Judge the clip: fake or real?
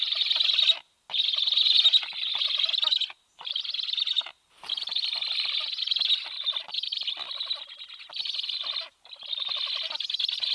real